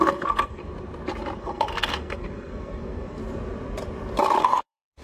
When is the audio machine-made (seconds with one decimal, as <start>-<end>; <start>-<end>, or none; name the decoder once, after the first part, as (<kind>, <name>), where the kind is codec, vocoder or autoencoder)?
0.0-0.6 (codec, SNAC); 1.4-3.2; 4.4-5.0